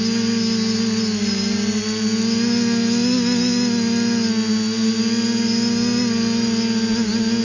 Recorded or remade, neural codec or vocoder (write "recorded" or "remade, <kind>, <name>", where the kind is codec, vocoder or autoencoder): recorded